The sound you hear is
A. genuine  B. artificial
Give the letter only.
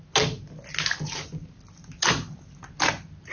A